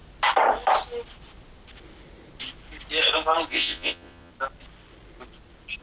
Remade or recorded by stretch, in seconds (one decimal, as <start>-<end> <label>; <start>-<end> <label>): 0.0-3.5 recorded; 3.5-4.3 remade; 4.3-5.8 recorded